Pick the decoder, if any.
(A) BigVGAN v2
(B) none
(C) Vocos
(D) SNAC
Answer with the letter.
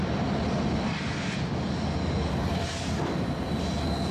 B